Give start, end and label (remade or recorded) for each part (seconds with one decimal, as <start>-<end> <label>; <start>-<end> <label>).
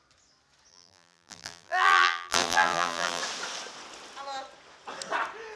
0.0-0.7 recorded; 0.7-3.2 remade; 3.2-5.6 recorded